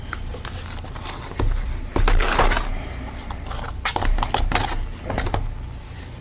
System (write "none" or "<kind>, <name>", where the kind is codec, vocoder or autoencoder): none